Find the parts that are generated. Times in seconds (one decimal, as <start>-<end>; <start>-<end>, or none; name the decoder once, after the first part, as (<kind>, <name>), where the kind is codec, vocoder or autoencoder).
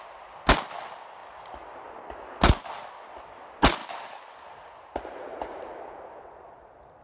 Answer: 3.8-5.7 (vocoder, BigVGAN v2)